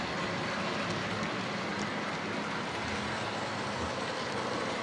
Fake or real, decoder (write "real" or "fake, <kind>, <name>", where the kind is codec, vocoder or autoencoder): real